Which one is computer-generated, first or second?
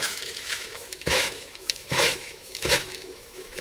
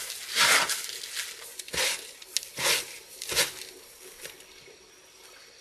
first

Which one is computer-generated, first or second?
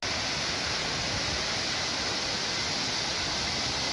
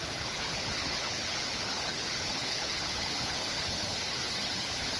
second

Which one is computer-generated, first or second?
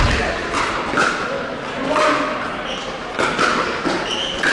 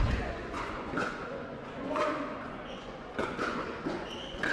second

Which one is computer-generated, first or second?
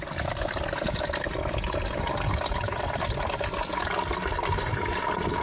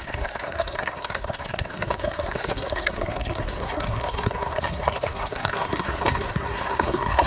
second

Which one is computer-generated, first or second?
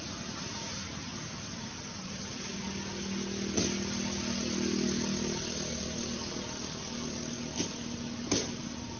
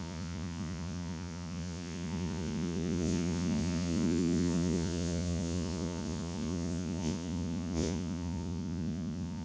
second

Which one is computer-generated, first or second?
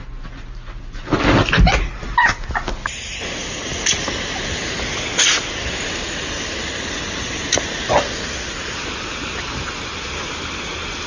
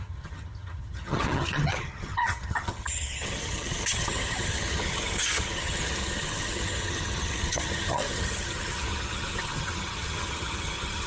second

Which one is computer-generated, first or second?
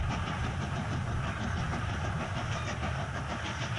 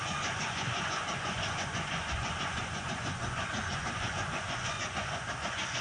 second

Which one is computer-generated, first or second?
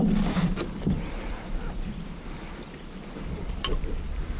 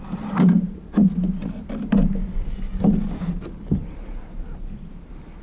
first